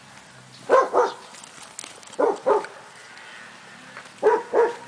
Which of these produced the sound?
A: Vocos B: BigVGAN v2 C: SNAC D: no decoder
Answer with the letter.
D